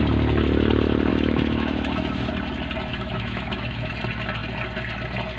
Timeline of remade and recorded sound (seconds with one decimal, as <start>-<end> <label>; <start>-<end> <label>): 0.0-1.1 recorded; 1.1-2.3 remade; 2.3-2.9 recorded; 2.9-3.9 remade; 3.9-5.4 recorded